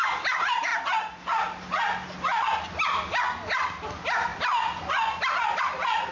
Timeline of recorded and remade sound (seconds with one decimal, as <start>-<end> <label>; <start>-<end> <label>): 0.0-6.1 recorded